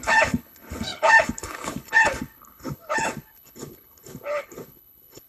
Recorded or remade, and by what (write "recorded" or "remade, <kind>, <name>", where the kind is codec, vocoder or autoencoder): remade, codec, HILCodec